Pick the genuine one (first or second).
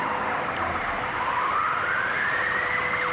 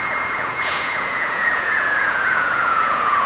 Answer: first